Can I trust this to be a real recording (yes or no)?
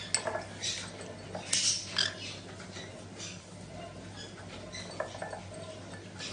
yes